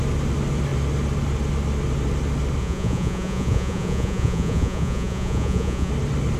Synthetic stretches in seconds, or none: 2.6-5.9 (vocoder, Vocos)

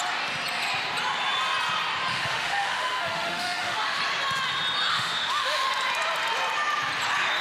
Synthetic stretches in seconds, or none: 2.1-4.0 (autoencoder, DAC-VAE); 4.9-5.7

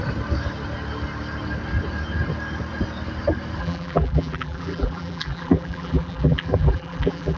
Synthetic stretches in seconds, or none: 3.6-7.4 (vocoder, BigVGAN v2)